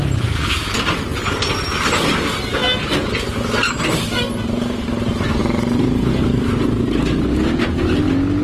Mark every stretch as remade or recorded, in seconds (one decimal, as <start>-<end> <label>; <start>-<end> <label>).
0.0-8.4 recorded